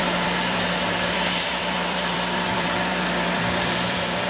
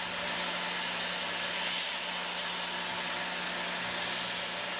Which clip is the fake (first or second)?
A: first